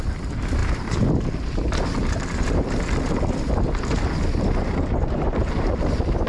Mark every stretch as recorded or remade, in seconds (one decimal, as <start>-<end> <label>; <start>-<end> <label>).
0.0-4.9 recorded; 4.9-5.8 remade; 5.8-6.3 recorded